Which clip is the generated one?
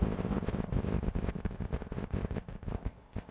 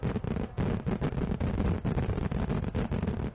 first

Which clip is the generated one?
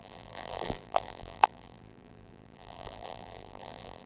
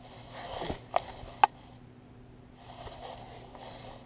first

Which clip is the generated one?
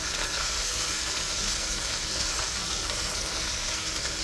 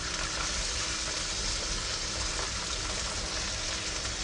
first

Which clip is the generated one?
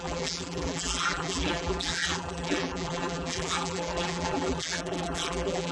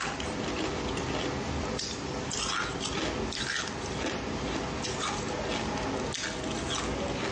first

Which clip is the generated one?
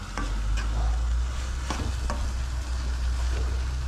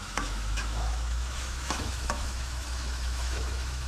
second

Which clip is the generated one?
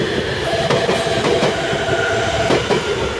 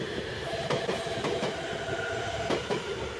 second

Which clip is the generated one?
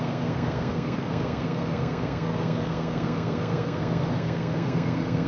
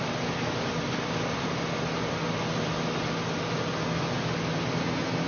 first